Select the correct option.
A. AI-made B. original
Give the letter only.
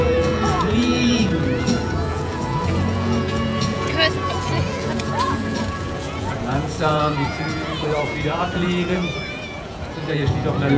A